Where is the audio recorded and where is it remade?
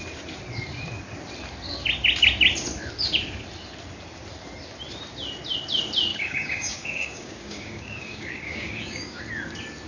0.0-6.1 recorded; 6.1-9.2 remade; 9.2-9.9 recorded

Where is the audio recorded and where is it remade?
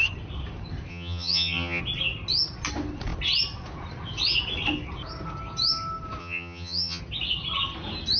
0.0-0.9 recorded; 0.9-1.8 remade; 1.8-6.2 recorded; 6.2-7.0 remade; 7.0-8.2 recorded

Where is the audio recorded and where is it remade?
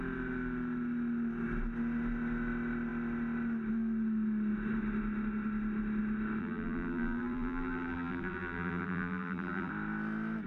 0.0-6.4 recorded; 6.4-9.7 remade; 9.7-10.5 recorded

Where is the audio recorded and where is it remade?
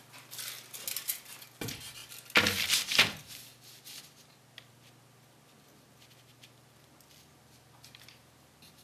0.0-8.8 recorded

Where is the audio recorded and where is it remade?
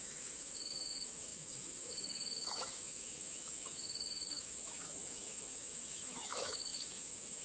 0.0-7.4 remade